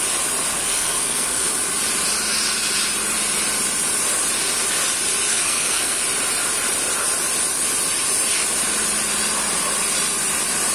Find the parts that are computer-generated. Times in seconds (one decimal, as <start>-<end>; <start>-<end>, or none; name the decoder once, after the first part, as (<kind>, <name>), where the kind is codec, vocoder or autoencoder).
0.5-1.5 (codec, SNAC); 5.3-6.0